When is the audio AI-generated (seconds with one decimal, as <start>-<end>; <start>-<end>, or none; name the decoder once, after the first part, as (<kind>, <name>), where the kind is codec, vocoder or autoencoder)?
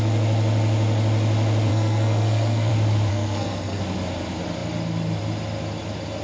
1.7-2.7 (codec, SNAC); 3.1-3.8